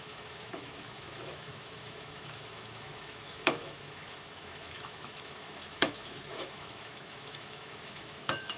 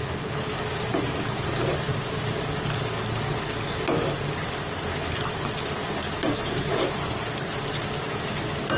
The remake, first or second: first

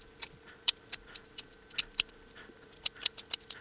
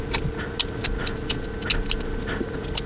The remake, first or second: first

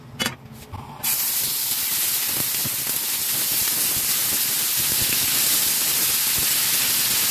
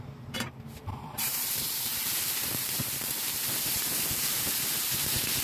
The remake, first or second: second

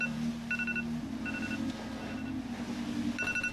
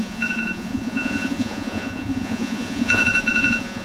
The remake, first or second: second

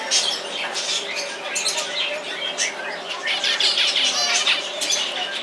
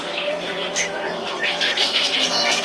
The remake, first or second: second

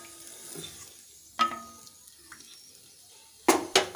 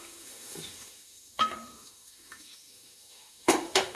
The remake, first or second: second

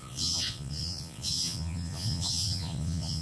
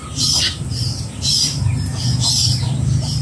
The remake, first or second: first